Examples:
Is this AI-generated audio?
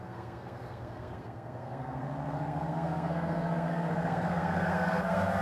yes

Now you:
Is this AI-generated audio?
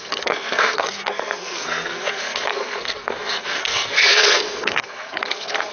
yes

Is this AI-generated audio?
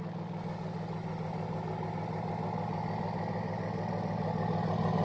no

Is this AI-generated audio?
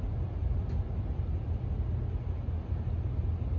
no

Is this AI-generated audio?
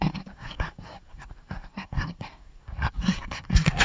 yes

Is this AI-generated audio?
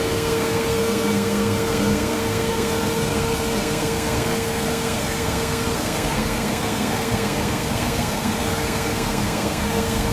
yes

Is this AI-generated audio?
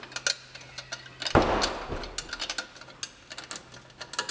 no